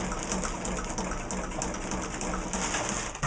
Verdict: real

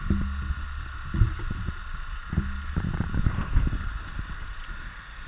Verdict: real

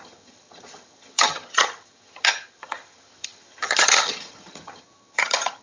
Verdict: fake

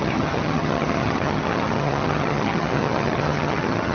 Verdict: fake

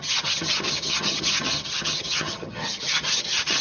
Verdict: fake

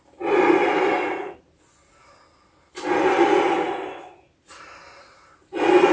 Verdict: real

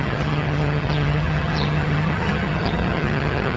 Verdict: fake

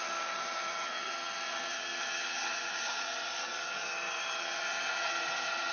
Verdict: fake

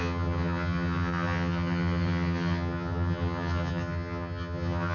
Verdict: fake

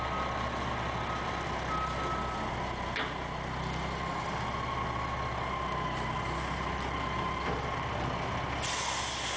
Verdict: real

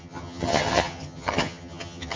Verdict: fake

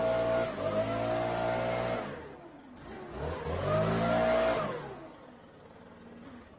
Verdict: real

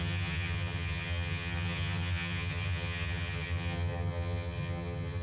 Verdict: fake